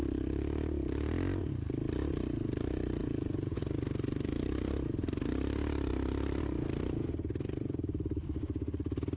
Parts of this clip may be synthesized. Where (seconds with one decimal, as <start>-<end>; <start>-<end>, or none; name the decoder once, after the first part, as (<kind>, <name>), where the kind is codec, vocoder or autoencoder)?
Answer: 3.0-3.6 (vocoder, Vocos)